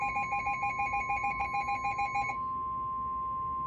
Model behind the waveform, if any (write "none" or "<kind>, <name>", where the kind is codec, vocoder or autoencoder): none